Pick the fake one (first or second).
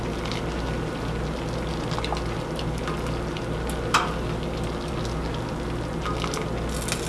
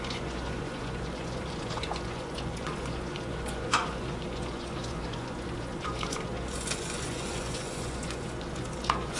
second